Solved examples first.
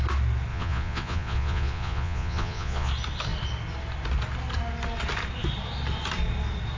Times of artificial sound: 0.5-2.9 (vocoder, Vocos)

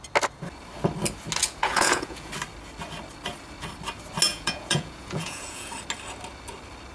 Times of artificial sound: 1.4-2.3 (vocoder, Vocos); 4.3-5.7

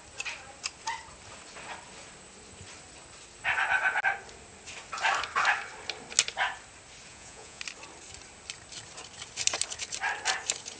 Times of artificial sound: 7.1-7.6 (vocoder, Vocos)

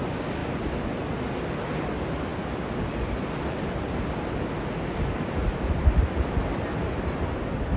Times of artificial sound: none

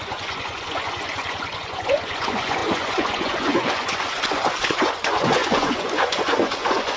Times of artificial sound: 0.0-7.0 (vocoder, Vocos)

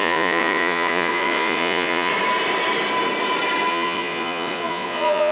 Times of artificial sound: 0.0-2.1 (vocoder, Vocos); 3.7-5.3